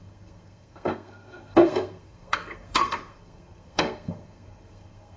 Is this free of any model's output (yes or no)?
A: no